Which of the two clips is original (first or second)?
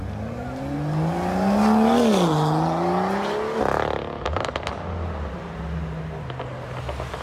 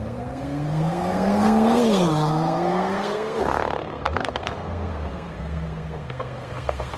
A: first